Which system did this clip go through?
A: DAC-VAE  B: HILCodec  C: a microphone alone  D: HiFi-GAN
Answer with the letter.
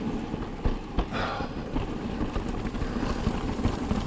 C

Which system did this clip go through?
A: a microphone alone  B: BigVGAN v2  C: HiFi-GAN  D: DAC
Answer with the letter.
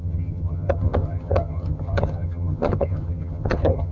C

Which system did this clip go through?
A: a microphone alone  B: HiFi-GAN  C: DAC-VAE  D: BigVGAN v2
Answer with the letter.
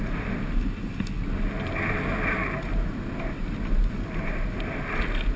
A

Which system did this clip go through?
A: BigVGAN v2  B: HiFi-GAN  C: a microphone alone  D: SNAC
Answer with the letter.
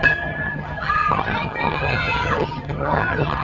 B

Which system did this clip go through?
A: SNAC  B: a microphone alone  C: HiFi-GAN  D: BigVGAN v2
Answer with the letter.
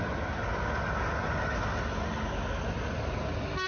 B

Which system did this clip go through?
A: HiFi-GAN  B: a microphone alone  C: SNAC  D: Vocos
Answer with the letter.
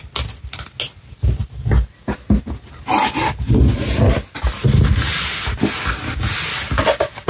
B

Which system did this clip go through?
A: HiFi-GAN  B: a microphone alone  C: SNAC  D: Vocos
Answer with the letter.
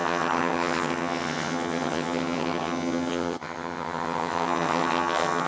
A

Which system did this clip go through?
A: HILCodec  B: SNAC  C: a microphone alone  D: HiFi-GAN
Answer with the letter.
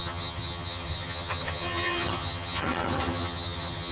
D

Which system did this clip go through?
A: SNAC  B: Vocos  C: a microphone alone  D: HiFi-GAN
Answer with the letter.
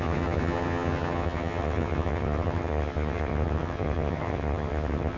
D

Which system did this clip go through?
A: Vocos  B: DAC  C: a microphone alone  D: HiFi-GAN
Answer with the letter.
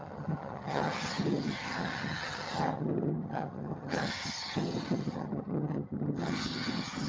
D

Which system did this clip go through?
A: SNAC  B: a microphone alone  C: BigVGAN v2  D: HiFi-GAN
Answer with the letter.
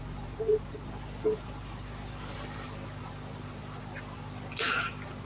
B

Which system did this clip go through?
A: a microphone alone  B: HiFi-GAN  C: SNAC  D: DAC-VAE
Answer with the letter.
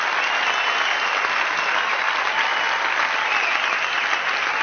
A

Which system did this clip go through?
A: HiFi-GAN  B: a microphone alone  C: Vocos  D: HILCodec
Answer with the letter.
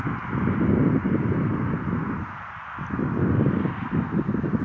B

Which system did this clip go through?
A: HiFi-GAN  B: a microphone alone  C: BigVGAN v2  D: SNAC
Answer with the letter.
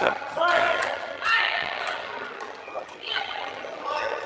A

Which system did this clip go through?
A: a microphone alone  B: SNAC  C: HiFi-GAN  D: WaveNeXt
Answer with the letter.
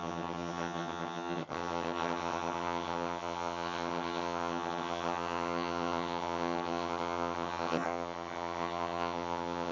C